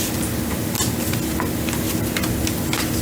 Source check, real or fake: real